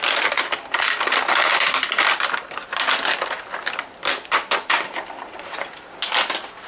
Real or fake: real